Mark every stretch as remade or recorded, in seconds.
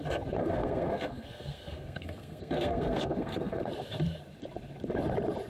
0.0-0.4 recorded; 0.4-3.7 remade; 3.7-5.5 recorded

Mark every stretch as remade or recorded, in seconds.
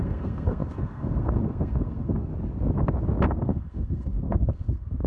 0.0-2.3 remade; 2.3-3.3 recorded; 3.3-5.1 remade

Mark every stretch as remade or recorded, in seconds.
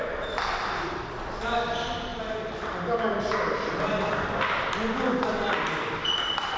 0.0-6.6 recorded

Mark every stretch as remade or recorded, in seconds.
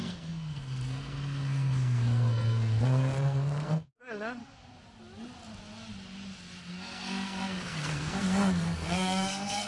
0.0-4.4 remade; 4.4-6.7 recorded; 6.7-9.7 remade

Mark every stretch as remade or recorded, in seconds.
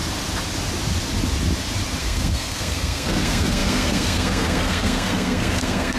0.0-2.0 recorded; 2.0-6.0 remade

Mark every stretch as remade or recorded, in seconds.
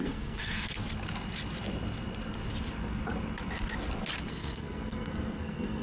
0.0-0.8 remade; 0.8-4.3 recorded; 4.3-5.8 remade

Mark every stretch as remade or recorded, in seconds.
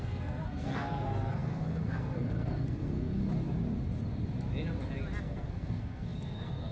0.0-3.2 remade; 3.2-5.2 recorded; 5.2-6.7 remade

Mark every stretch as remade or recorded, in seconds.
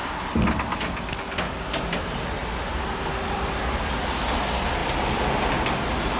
0.0-6.2 recorded